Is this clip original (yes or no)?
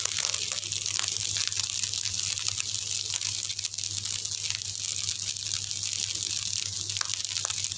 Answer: yes